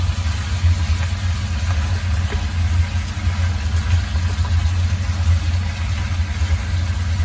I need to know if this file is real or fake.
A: real